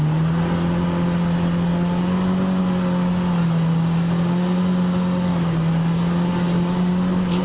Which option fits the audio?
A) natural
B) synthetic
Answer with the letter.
A